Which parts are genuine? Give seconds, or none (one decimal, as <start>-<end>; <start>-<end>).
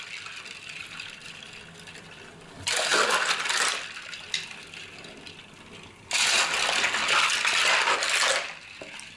0.0-9.2